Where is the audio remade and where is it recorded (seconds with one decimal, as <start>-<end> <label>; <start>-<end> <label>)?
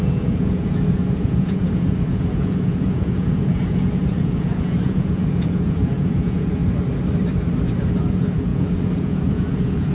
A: 0.0-6.6 remade; 6.6-8.1 recorded; 8.1-9.9 remade